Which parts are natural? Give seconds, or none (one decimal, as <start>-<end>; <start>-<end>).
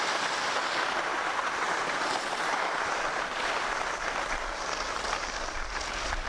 0.0-1.1; 3.5-6.3